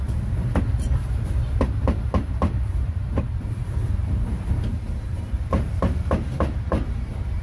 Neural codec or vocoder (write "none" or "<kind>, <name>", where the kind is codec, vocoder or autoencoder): vocoder, BigVGAN v2